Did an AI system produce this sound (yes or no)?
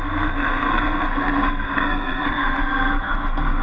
yes